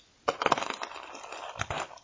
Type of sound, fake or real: real